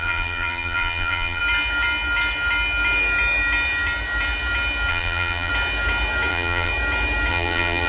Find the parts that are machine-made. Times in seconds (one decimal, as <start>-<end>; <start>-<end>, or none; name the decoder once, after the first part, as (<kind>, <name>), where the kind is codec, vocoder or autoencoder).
0.0-1.4 (vocoder, BigVGAN v2); 4.9-5.5; 6.3-6.7; 7.3-7.9